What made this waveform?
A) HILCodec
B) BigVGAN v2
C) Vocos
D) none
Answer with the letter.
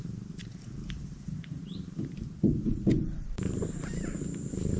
B